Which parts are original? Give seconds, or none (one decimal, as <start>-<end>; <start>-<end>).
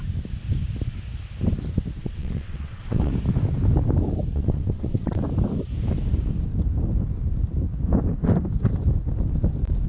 0.0-2.0; 3.1-4.3; 5.2-9.9